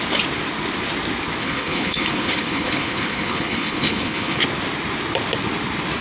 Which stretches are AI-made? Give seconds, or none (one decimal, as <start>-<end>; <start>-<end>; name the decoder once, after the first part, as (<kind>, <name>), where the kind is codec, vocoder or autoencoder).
1.4-4.4 (codec, HILCodec)